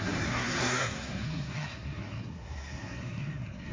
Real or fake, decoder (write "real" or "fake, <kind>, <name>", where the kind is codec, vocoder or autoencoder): fake, codec, SNAC